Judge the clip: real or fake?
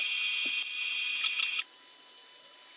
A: real